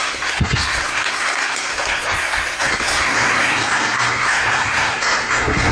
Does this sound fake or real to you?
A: fake